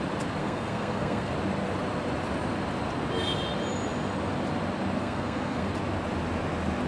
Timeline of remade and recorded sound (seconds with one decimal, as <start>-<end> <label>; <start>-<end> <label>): 0.0-0.4 recorded; 0.4-1.3 remade; 1.3-5.0 recorded; 5.0-5.7 remade; 5.7-6.9 recorded